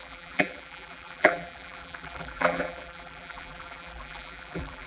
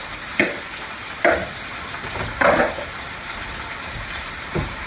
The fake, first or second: first